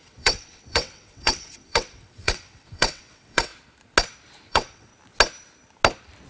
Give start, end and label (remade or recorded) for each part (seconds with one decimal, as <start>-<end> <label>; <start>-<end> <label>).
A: 0.0-3.5 remade; 3.5-4.5 recorded; 4.5-4.9 remade; 4.9-6.3 recorded